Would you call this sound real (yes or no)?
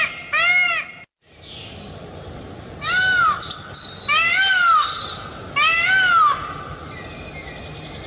yes